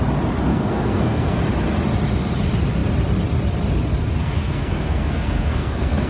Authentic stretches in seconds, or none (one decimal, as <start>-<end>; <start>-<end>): 0.0-0.5; 1.4-4.2